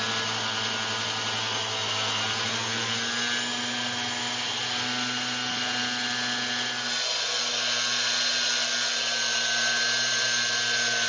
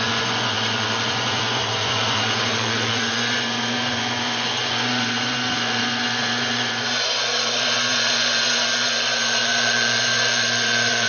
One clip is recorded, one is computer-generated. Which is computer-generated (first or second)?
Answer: second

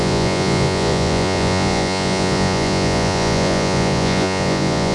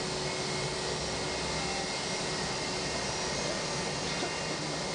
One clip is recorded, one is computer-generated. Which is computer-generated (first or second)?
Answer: first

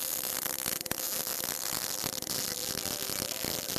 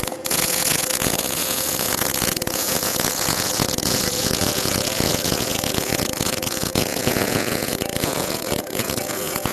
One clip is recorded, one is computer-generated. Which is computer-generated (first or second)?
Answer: second